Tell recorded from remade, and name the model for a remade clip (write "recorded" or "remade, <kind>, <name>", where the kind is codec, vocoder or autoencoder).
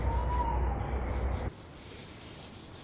recorded